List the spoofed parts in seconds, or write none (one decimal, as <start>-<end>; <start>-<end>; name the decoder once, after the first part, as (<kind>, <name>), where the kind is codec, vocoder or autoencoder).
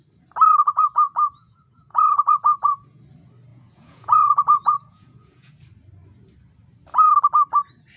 0.6-3.0 (vocoder, Vocos); 3.5-5.5